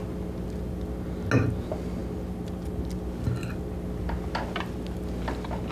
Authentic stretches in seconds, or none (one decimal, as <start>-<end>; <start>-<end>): 0.0-5.7